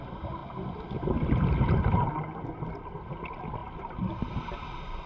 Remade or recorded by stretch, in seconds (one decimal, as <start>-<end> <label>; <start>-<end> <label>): 0.0-5.1 recorded